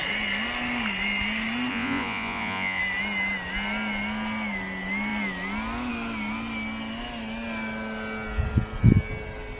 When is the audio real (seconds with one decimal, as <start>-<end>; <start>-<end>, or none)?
0.0-1.7; 2.8-9.6